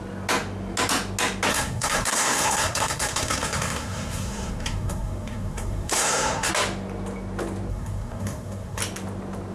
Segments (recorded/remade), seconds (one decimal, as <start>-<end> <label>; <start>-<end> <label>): 0.0-1.5 recorded; 1.5-6.5 remade; 6.5-7.7 recorded; 7.7-8.8 remade; 8.8-9.5 recorded